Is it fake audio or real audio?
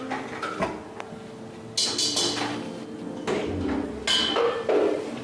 real